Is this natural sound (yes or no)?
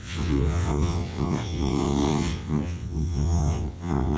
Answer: no